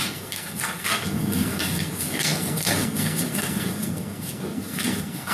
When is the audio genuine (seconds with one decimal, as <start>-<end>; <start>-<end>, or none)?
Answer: none